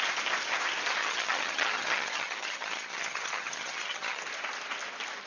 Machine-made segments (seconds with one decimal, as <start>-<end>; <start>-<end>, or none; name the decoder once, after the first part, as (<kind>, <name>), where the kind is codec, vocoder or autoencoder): 1.0-4.2 (vocoder, HiFi-GAN)